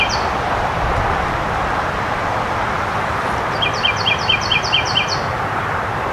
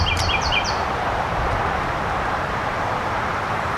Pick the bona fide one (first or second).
first